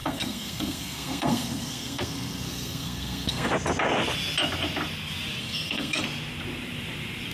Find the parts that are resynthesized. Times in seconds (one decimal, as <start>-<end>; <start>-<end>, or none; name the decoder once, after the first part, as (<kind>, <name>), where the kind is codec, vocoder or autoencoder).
0.0-3.5 (codec, SNAC); 5.4-6.0